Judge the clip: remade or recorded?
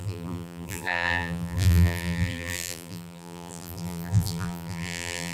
remade